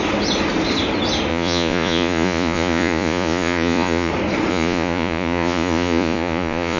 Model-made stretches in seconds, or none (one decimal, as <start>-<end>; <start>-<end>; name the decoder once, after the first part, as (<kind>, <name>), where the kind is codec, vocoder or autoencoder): 1.3-4.1 (vocoder, Vocos); 4.5-6.8